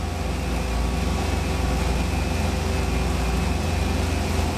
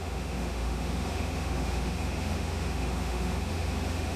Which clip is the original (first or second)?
first